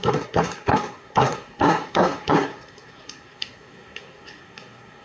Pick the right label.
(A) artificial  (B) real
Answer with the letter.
A